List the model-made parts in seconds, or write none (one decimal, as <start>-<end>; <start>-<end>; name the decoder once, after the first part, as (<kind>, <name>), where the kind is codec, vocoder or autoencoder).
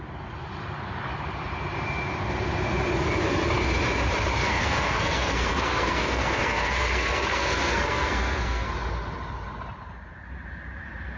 4.4-8.7 (codec, SNAC)